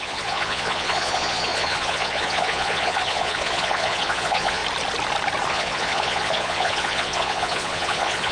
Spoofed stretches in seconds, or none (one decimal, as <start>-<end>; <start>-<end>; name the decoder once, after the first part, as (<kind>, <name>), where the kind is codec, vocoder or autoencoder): 0.0-4.6 (vocoder, Vocos); 5.5-8.3